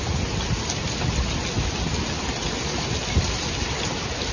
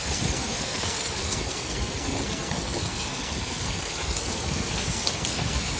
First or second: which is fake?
second